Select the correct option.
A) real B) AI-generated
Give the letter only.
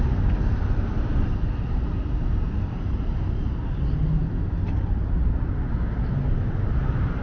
A